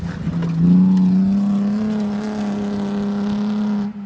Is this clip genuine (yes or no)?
yes